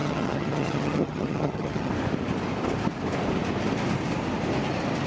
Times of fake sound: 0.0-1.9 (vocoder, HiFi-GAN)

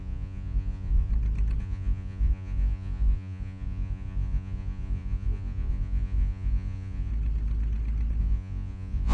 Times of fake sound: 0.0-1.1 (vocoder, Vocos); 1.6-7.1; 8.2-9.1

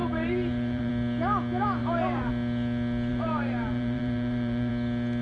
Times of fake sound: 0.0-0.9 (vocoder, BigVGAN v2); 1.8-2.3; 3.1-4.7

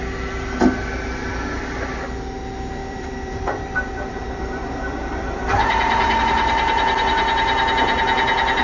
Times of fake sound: 2.8-6.2 (vocoder, BigVGAN v2)

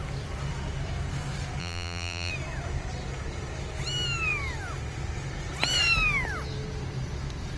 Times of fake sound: 1.6-2.3 (vocoder, BigVGAN v2)